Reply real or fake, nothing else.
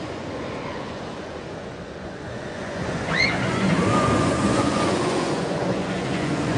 fake